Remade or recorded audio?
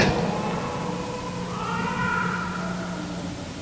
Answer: recorded